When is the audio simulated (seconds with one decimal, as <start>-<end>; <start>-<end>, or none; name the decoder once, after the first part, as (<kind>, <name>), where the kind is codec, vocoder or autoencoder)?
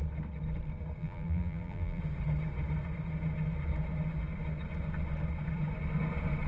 1.0-2.0 (vocoder, BigVGAN v2)